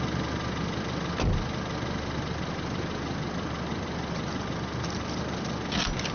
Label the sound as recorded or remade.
recorded